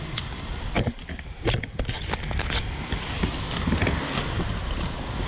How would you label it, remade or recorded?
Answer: recorded